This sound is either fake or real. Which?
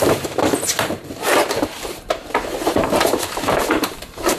fake